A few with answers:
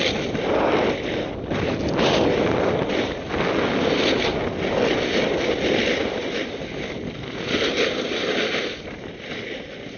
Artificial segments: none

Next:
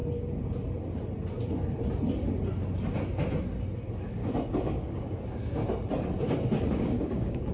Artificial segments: 4.5-5.6 (codec, DAC); 6.7-7.5

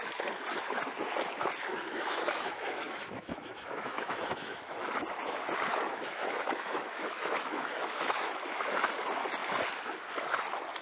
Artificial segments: 1.7-4.9 (autoencoder, DAC-VAE); 5.7-8.9

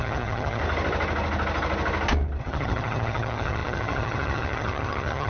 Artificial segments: 0.0-0.6 (vocoder, HiFi-GAN); 2.4-5.3

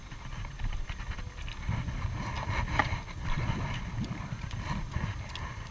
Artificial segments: 0.0-2.1 (vocoder, BigVGAN v2); 2.8-4.9

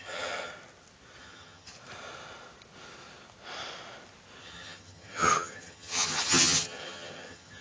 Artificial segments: 0.0-0.5 (vocoder, HiFi-GAN); 1.2-1.7; 4.4-7.6